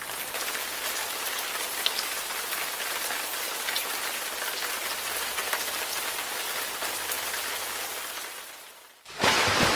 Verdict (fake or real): real